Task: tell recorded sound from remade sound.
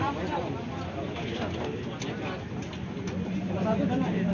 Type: recorded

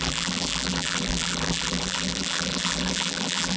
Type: remade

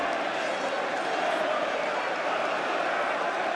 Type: recorded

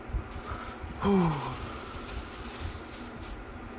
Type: recorded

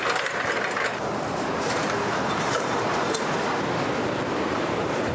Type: remade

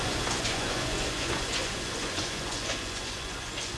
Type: remade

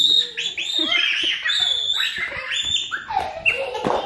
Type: recorded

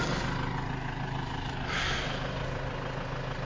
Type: recorded